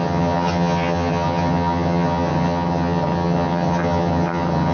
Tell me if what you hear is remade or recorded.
remade